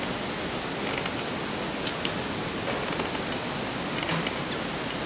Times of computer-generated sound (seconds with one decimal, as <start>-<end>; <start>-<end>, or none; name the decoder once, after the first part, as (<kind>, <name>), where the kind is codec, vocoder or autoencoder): none